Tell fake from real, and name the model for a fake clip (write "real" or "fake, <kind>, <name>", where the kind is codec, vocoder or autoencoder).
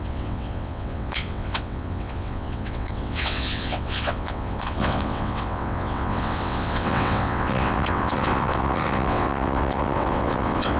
fake, vocoder, WaveNeXt